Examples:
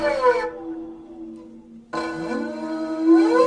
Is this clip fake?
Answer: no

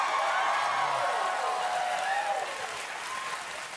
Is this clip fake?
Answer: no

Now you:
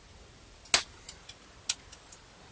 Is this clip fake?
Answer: no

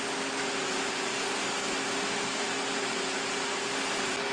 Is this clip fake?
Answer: no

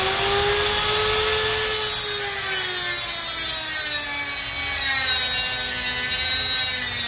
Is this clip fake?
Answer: no